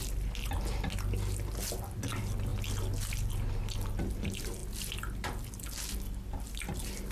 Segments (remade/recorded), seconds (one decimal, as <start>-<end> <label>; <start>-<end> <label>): 0.0-2.5 remade; 2.5-3.6 recorded; 3.6-4.6 remade; 4.6-6.4 recorded; 6.4-7.1 remade